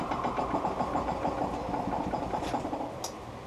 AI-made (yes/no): no